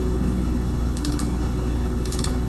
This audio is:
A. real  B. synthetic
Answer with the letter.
B